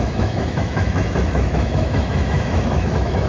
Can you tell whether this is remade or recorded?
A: remade